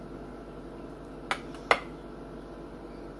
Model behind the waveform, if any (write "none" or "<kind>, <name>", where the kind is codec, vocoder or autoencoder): none